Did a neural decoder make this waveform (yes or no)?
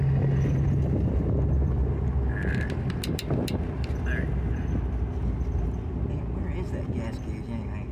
no